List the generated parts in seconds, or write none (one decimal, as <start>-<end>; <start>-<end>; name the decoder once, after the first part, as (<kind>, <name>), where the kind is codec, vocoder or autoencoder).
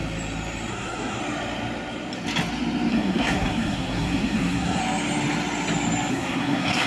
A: 0.7-1.2 (codec, SNAC); 2.9-4.8; 6.1-6.9